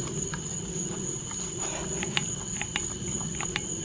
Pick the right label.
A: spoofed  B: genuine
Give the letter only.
B